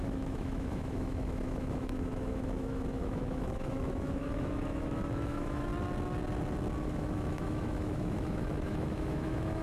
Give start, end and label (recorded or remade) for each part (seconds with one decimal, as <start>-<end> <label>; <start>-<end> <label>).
0.0-5.7 remade; 5.7-6.8 recorded; 6.8-9.6 remade